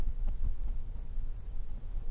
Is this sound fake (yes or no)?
no